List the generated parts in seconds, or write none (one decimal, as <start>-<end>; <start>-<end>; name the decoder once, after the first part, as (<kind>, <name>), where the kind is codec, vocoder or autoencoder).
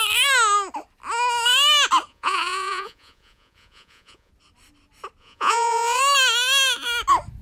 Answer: 2.1-4.3 (vocoder, Vocos); 5.2-6.0